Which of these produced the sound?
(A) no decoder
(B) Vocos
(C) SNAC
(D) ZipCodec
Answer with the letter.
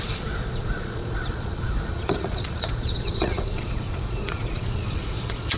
B